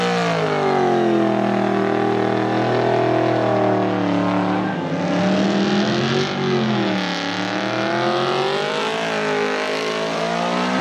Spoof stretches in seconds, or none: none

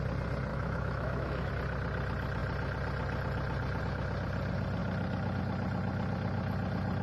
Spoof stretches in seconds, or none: 0.5-1.5

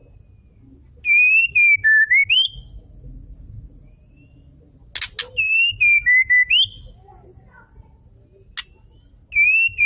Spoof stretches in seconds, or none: none

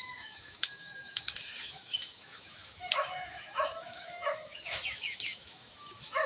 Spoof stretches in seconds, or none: 0.0-6.3